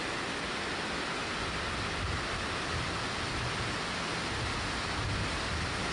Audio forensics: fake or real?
real